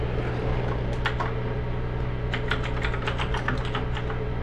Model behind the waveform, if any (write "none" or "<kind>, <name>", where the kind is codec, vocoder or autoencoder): none